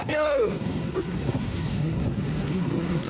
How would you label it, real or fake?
fake